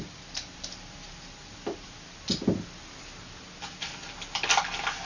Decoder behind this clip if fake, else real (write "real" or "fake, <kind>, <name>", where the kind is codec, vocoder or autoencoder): real